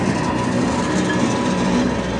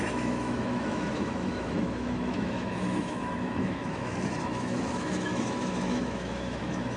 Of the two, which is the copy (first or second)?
second